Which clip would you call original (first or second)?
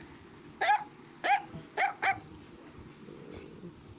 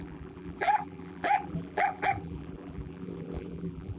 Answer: first